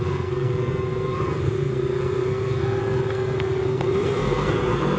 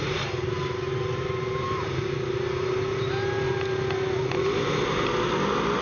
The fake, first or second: first